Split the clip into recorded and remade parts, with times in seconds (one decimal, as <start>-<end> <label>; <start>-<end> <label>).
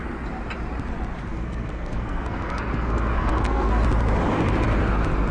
0.0-1.3 recorded; 1.3-3.7 remade; 3.7-5.3 recorded